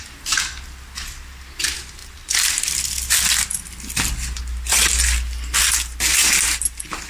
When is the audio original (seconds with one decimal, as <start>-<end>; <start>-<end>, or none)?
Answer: 0.0-7.1